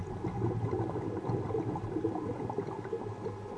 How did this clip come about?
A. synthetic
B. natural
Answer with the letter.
B